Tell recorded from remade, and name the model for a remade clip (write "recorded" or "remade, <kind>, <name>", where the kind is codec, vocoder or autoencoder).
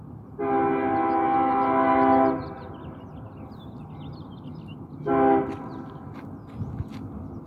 recorded